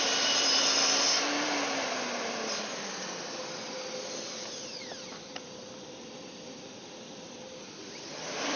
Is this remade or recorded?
remade